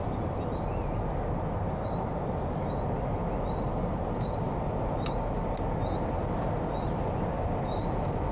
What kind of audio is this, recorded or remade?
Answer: recorded